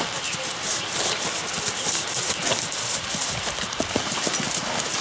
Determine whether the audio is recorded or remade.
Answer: recorded